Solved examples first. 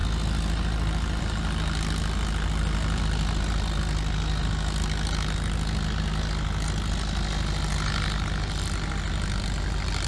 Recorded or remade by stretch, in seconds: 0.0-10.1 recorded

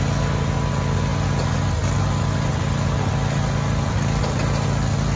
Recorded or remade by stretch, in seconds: 0.0-5.2 recorded